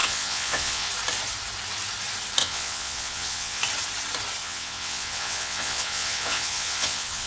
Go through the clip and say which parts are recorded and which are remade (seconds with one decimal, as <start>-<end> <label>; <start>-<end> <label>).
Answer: 0.0-0.9 remade; 0.9-2.4 recorded; 2.4-3.6 remade; 3.6-4.4 recorded; 4.4-7.3 remade